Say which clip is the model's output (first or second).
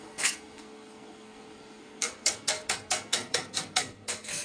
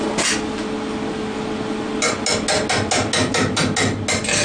first